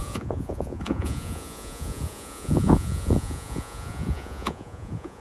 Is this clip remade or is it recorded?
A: remade